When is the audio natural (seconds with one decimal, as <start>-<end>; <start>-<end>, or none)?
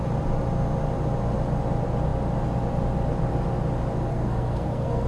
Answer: 0.0-4.1